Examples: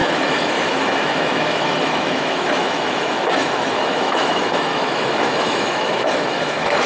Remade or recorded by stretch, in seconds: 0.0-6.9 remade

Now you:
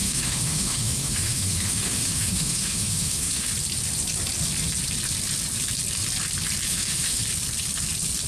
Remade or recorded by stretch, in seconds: 0.0-3.5 remade; 3.5-6.7 recorded; 6.7-7.2 remade; 7.2-8.3 recorded

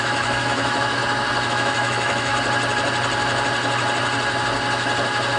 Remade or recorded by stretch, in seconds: 0.0-1.0 remade; 1.0-1.5 recorded; 1.5-2.3 remade; 2.3-5.4 recorded